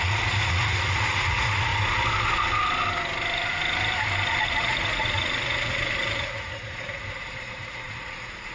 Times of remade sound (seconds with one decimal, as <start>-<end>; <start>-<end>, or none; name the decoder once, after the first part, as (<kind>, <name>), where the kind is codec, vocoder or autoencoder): 0.0-1.7 (vocoder, Vocos); 4.4-8.5